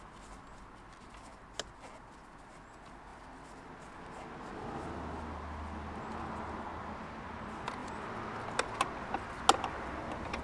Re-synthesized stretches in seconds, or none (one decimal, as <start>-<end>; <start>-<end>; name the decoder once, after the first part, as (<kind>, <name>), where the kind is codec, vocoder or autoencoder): none